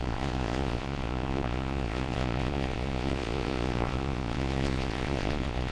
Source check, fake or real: fake